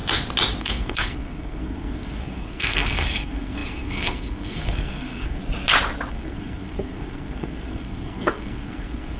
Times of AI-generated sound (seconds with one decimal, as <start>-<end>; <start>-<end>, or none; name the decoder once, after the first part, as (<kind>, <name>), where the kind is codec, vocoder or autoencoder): 0.6-5.4 (codec, SNAC); 6.1-9.2